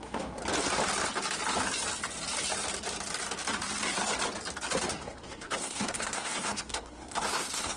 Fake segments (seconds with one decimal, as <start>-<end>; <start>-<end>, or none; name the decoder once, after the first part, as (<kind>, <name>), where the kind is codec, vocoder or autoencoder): 0.0-0.4 (codec, SNAC); 5.0-7.8